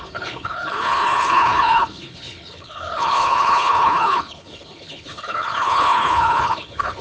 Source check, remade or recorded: remade